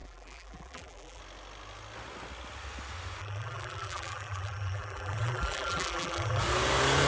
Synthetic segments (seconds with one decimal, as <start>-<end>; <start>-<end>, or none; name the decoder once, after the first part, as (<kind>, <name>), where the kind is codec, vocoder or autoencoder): 0.0-1.2 (vocoder, BigVGAN v2); 3.2-6.4

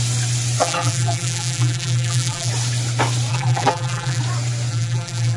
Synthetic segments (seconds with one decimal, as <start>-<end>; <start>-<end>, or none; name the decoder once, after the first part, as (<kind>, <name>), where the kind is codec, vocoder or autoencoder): 0.6-2.5 (vocoder, BigVGAN v2); 3.3-4.2; 4.7-5.4

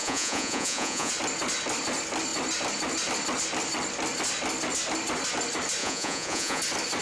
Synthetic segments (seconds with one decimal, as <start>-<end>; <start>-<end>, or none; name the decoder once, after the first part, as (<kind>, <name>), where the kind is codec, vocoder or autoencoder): 0.0-1.1 (vocoder, Vocos); 5.8-6.6